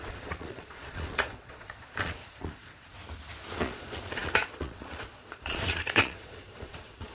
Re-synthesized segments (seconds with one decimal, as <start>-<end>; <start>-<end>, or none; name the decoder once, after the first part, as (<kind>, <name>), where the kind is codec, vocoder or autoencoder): 0.0-3.0 (vocoder, Vocos); 3.6-7.1